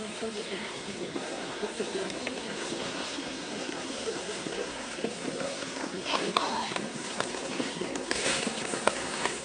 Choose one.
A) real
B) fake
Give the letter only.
B